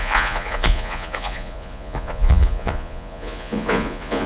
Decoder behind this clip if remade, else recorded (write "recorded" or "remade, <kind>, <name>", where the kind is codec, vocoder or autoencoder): remade, vocoder, Vocos